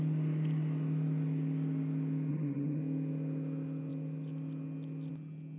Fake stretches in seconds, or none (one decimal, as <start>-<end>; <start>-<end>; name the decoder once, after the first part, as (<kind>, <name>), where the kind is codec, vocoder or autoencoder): 2.3-2.8 (vocoder, HiFi-GAN)